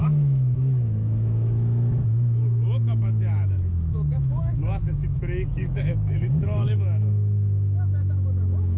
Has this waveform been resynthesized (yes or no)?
yes